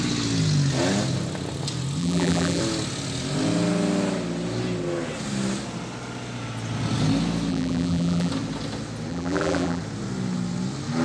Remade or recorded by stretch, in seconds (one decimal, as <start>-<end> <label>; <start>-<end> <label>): 0.0-2.0 recorded; 2.0-2.6 remade; 2.6-7.5 recorded; 7.5-8.3 remade; 8.3-9.1 recorded; 9.1-9.8 remade; 9.8-11.0 recorded